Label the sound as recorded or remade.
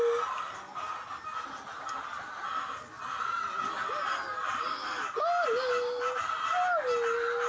recorded